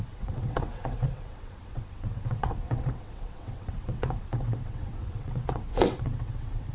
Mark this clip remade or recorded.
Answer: remade